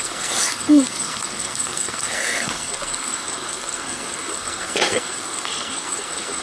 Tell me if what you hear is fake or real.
fake